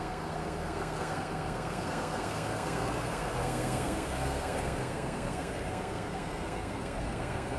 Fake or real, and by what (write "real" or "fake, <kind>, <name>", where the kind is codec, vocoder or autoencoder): fake, codec, SNAC